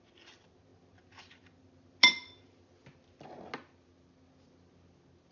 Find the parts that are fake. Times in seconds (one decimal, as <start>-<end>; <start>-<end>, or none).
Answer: none